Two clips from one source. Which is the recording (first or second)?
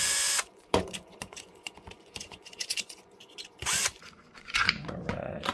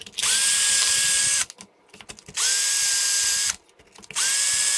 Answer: second